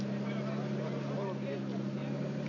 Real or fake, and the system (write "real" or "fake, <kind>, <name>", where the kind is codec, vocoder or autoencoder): real